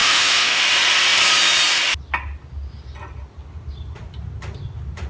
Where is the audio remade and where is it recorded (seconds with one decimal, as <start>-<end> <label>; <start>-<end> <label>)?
0.0-0.6 remade; 0.6-5.1 recorded